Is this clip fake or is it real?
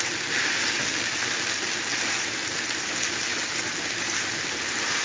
real